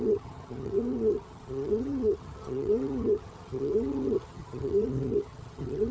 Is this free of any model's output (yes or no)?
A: no